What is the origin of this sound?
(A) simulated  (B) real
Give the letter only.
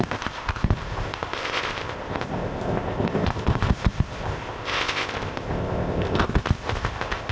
A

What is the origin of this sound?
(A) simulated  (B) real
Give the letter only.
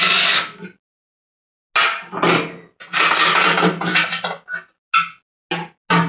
B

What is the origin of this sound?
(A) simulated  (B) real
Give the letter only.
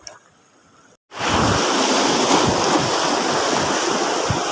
B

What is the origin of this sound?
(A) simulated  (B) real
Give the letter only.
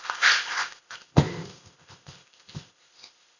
A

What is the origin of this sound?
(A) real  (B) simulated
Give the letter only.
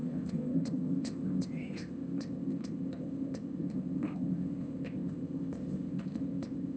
B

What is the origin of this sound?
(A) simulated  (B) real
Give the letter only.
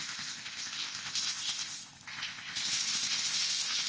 A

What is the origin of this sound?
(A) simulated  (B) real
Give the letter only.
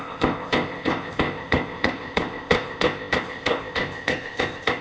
A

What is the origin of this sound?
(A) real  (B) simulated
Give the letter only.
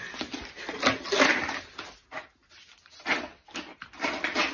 A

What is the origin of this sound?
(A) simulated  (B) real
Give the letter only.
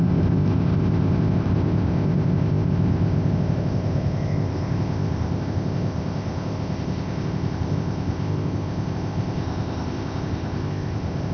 A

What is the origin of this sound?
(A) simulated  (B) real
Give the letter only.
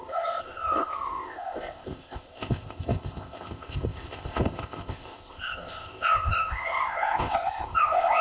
A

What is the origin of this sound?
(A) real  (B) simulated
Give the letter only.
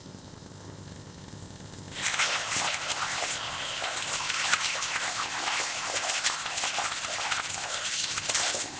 B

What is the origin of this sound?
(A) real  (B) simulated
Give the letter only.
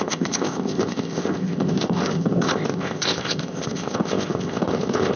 B